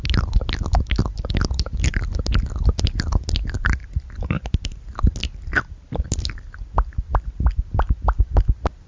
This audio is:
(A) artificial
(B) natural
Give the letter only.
B